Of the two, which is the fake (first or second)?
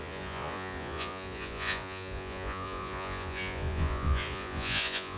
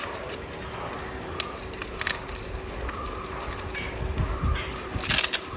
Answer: first